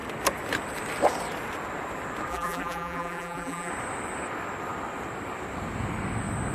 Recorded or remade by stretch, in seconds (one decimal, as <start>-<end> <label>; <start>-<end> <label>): 0.0-2.3 recorded; 2.3-3.7 remade; 3.7-6.5 recorded